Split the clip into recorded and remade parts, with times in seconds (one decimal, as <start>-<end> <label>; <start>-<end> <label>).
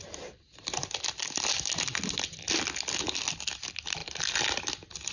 0.0-5.1 recorded